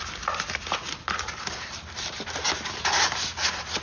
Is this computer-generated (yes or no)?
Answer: no